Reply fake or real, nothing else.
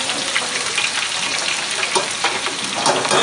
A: real